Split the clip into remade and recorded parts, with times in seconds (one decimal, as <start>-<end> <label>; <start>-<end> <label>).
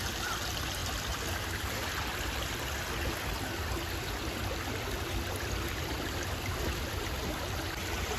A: 0.0-8.2 recorded